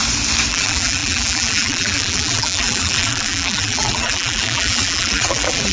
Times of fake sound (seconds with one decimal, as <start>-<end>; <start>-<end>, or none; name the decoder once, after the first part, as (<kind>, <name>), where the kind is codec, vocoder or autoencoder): 0.5-5.7 (vocoder, BigVGAN v2)